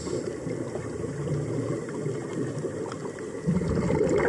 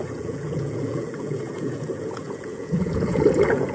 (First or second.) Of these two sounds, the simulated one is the second